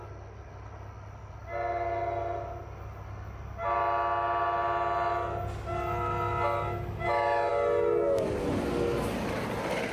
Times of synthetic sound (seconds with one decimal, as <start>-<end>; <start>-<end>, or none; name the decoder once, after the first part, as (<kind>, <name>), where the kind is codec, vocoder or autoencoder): none